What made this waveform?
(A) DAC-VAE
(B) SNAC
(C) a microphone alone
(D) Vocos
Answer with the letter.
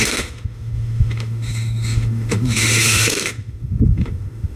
A